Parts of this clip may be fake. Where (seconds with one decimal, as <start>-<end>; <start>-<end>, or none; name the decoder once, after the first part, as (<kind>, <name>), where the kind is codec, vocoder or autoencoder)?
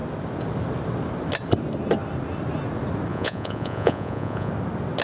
3.1-4.5 (vocoder, Vocos)